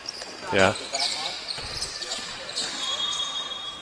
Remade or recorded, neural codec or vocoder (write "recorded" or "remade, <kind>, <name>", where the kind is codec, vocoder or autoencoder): remade, vocoder, BigVGAN v2